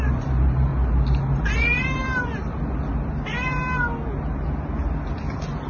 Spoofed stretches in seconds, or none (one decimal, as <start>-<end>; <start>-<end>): 0.0-0.7; 1.3-2.0

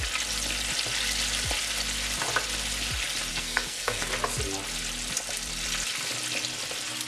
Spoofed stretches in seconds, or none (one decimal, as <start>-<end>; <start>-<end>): 3.3-4.1